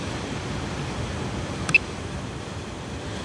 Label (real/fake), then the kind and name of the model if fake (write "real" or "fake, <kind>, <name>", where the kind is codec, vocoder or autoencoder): real